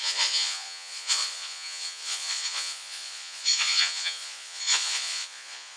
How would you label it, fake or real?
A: fake